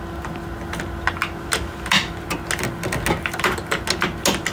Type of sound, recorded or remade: recorded